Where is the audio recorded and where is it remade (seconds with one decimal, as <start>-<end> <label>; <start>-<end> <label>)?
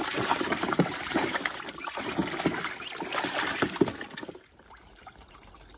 0.0-2.2 remade; 2.2-4.7 recorded; 4.7-5.8 remade